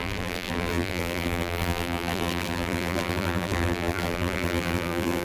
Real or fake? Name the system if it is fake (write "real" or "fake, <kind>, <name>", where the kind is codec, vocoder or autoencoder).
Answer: fake, vocoder, BigVGAN v2